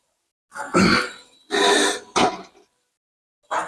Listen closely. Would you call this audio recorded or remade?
recorded